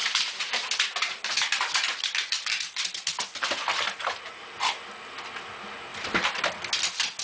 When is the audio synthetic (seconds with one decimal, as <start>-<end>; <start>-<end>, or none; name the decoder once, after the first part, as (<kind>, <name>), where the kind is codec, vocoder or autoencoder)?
0.0-4.3 (vocoder, BigVGAN v2); 5.9-6.6